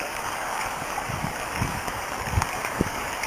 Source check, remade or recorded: remade